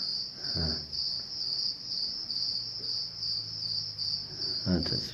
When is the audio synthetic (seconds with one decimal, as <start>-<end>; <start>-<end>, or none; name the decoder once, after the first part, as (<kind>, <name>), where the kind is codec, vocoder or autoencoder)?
1.0-1.7 (vocoder, BigVGAN v2); 4.2-5.1